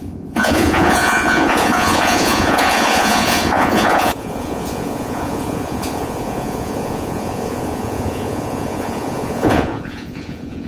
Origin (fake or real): fake